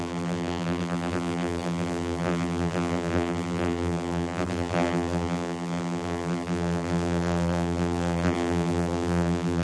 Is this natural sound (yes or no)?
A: no